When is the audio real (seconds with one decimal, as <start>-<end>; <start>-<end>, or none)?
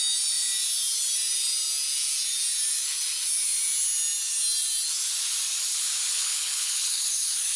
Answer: 0.0-5.7